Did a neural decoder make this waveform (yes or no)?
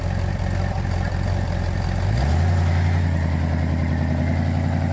no